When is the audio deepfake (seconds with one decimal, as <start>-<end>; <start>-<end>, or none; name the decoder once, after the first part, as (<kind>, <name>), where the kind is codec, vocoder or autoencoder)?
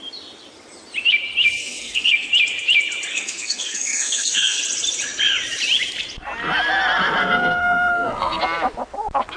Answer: 1.6-2.3 (codec, SNAC); 3.1-4.6; 7.2-8.4